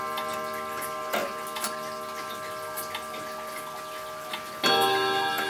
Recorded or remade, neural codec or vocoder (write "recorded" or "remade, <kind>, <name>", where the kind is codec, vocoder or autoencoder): recorded